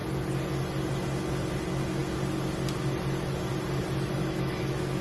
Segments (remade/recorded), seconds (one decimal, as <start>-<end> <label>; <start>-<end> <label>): 0.0-4.2 recorded; 4.2-5.0 remade